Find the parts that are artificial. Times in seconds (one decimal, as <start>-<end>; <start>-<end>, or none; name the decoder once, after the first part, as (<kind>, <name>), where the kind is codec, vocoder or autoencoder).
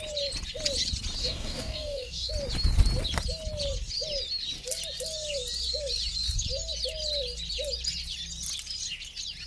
1.2-2.3 (codec, DAC)